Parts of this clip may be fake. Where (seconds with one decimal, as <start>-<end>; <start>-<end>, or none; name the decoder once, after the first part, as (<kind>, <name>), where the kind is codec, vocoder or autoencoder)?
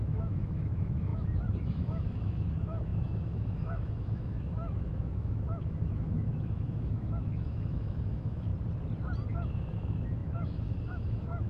0.0-8.5 (autoencoder, DAC-VAE); 9.3-11.5